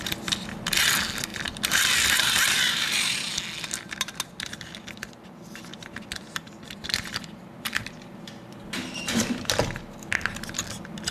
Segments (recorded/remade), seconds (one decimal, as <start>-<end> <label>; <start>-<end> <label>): 0.0-1.3 recorded; 1.3-3.4 remade; 3.4-5.7 recorded; 5.7-9.8 remade; 9.8-11.1 recorded

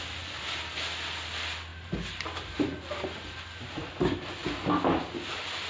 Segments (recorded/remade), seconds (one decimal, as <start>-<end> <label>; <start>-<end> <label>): 0.0-5.7 recorded

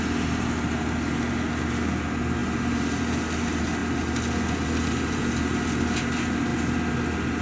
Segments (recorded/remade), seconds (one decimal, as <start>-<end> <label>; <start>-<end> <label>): 0.0-7.4 recorded

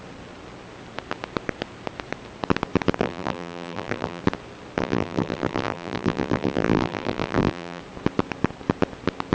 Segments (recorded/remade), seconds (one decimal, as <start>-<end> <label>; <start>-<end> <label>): 0.0-3.0 recorded; 3.0-4.2 remade; 4.2-4.8 recorded; 4.8-7.8 remade; 7.8-9.3 recorded

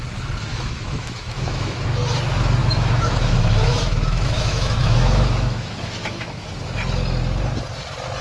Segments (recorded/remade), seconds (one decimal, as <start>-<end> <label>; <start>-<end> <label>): 0.0-0.5 recorded; 0.5-1.8 remade; 1.8-2.6 recorded; 2.6-6.5 remade; 6.5-8.2 recorded

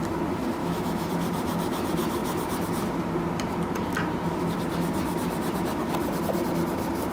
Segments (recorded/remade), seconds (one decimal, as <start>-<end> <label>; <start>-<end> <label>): 0.0-0.6 recorded; 0.6-1.1 remade; 1.1-7.1 recorded